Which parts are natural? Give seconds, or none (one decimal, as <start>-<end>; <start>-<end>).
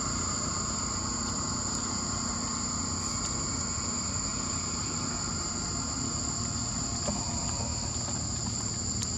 0.0-4.3; 5.9-7.7; 8.7-9.2